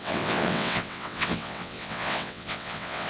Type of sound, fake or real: fake